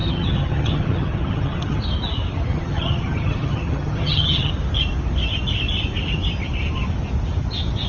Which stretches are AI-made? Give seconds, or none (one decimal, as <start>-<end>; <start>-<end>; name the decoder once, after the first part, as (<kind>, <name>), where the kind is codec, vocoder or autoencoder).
0.0-1.8 (vocoder, HiFi-GAN); 2.5-4.5